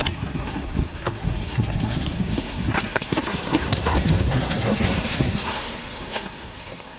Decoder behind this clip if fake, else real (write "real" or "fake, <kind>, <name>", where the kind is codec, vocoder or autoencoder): fake, codec, SNAC